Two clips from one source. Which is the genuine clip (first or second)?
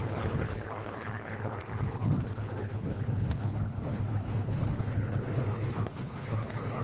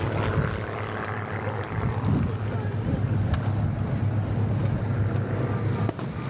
second